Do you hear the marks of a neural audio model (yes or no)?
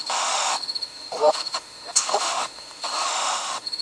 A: yes